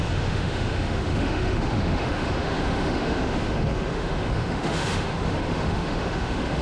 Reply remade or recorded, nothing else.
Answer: remade